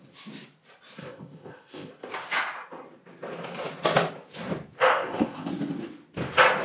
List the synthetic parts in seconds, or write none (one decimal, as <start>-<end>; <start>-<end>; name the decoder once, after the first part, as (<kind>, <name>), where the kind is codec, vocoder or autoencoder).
1.0-1.9 (codec, ZipCodec); 4.9-5.5